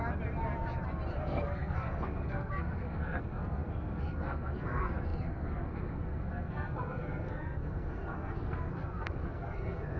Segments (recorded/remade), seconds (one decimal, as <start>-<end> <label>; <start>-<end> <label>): 0.0-1.1 recorded; 1.1-10.0 remade